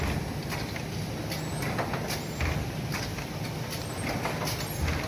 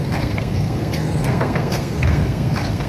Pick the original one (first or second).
first